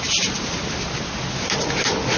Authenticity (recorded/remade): recorded